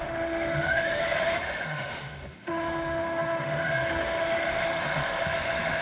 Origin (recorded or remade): remade